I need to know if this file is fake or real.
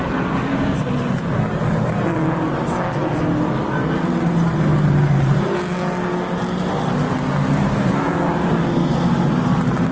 real